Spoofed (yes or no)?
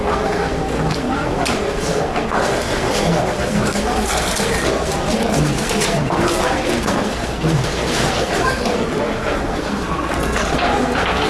yes